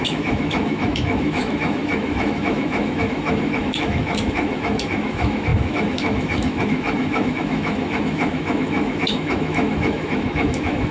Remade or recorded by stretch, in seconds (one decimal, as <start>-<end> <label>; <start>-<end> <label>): 0.0-10.9 remade